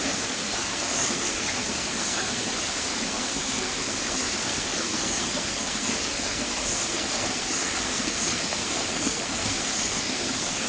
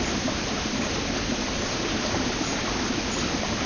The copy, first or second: first